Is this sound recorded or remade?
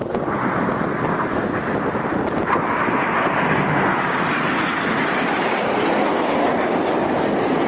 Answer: recorded